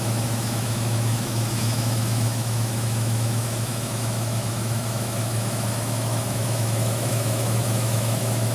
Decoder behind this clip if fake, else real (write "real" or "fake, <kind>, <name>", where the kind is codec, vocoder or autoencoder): fake, autoencoder, DAC-VAE